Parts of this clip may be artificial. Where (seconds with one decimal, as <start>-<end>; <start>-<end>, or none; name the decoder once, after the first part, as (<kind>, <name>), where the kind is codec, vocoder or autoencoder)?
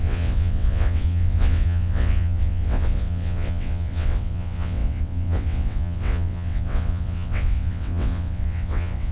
0.0-9.1 (vocoder, WaveNeXt)